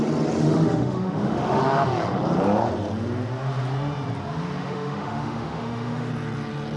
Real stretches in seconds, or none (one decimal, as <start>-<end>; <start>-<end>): 0.0-0.4; 1.6-4.6; 6.1-6.8